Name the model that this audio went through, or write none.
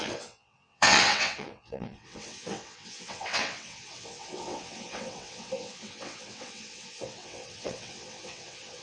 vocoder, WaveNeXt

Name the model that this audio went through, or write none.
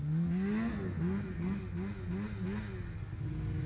none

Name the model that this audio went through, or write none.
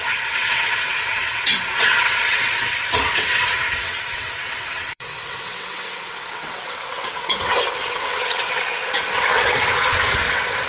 vocoder, WaveNeXt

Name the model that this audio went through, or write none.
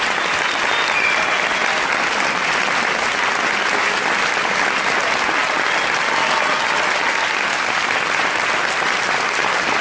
none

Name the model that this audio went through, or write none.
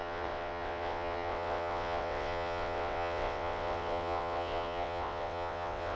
vocoder, WaveNeXt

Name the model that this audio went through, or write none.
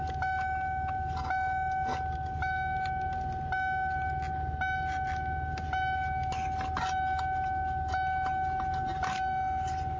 none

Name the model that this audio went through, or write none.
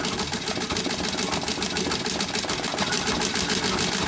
none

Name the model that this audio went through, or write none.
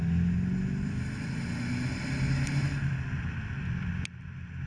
none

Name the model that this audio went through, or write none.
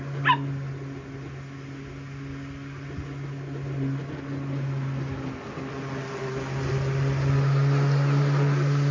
none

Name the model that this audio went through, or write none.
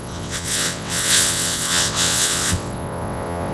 vocoder, WaveNeXt